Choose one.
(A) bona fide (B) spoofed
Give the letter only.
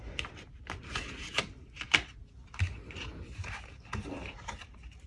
A